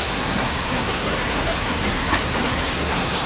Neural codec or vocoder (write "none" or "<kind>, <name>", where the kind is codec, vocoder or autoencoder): codec, SNAC